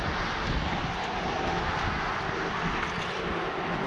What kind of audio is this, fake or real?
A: real